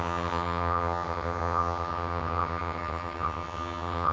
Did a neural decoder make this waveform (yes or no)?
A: yes